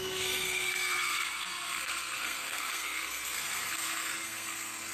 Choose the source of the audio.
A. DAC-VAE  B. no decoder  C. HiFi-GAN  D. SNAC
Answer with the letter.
D